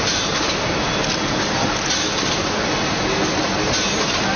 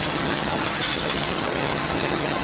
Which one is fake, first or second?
second